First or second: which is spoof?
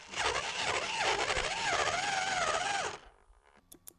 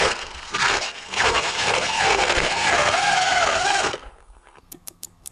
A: second